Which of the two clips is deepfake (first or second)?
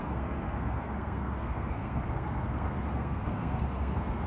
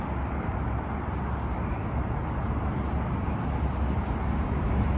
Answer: first